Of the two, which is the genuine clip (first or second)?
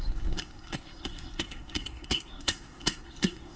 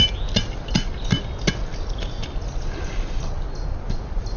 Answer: second